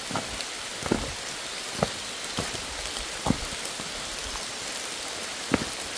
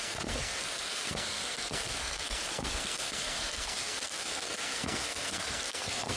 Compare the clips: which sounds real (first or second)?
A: first